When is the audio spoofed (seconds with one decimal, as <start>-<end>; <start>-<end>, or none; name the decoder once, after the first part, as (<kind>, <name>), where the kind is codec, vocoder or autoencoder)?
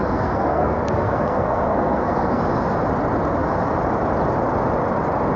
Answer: 0.0-2.4 (codec, SNAC)